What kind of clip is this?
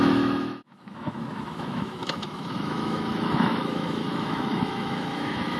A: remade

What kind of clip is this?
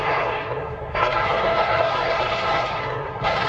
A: remade